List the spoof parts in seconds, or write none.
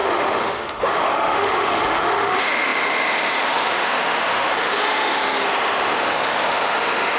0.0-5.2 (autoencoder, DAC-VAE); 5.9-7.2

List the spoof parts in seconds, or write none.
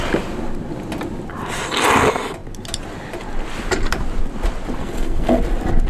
4.8-5.4 (codec, SNAC)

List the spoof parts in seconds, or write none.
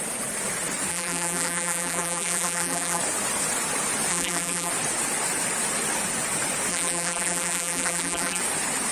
0.9-3.0 (vocoder, BigVGAN v2); 4.1-4.7; 6.7-8.4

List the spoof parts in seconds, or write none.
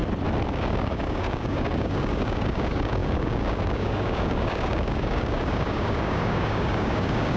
0.5-7.4 (codec, DAC)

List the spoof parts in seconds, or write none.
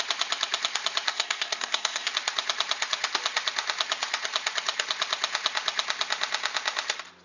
1.1-2.1 (codec, SNAC)